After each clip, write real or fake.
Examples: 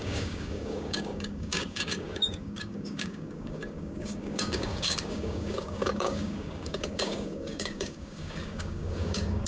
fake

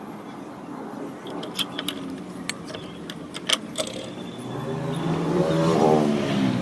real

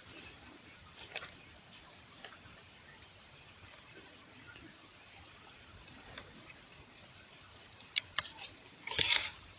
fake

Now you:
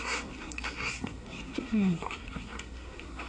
fake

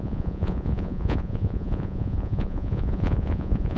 fake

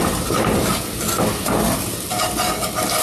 real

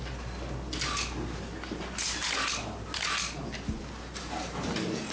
real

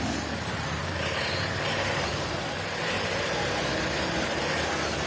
fake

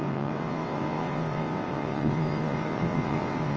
fake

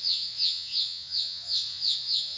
fake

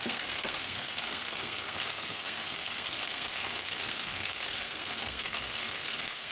fake